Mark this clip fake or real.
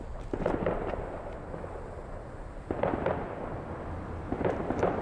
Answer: real